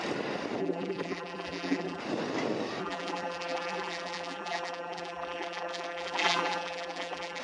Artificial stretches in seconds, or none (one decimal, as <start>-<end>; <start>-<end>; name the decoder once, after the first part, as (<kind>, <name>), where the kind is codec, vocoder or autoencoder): 0.6-2.0 (vocoder, BigVGAN v2); 2.8-7.4